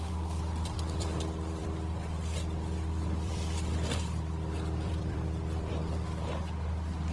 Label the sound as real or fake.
fake